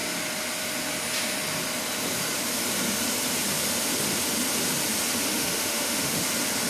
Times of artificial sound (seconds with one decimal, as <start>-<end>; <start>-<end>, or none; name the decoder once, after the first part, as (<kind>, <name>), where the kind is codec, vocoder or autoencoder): 5.3-6.3 (autoencoder, DAC-VAE)